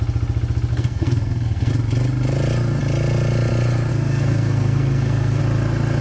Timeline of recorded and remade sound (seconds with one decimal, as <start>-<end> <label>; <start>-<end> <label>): 0.0-0.7 recorded; 0.7-1.7 remade; 1.7-3.9 recorded; 3.9-5.4 remade; 5.4-6.0 recorded